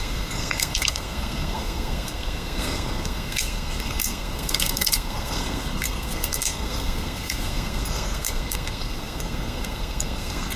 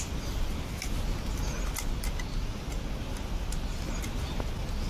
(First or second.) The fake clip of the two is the first